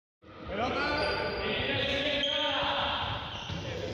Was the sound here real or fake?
real